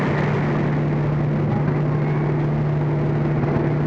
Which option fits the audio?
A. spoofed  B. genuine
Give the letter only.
B